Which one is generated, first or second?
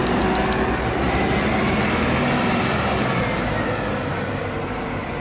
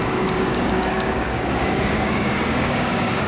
second